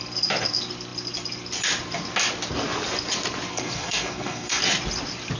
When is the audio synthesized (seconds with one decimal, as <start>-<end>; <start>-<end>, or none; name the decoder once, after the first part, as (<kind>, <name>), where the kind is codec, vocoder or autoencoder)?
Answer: 3.5-4.6 (codec, SNAC)